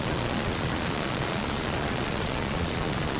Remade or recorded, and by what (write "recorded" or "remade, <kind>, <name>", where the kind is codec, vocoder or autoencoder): remade, vocoder, Vocos